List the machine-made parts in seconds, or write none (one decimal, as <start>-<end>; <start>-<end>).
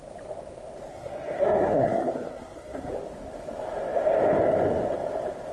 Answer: 0.9-2.9